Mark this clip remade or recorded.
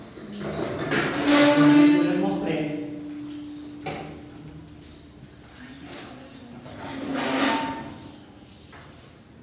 recorded